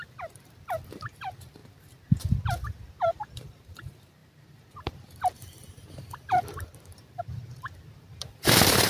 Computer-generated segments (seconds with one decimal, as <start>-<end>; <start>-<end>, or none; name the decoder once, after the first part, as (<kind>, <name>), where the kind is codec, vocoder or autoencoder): 0.0-8.9 (vocoder, BigVGAN v2)